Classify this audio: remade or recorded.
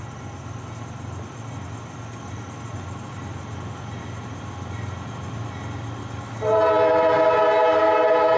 recorded